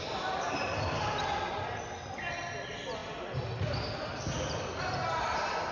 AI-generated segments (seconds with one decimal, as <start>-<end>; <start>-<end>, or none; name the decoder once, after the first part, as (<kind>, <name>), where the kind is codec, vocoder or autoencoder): none